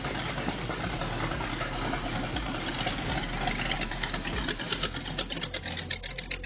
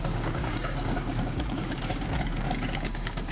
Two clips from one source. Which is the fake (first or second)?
second